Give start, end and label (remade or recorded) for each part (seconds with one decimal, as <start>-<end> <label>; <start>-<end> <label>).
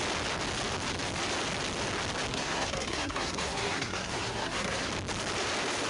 0.0-2.3 recorded; 2.3-4.9 remade; 4.9-5.9 recorded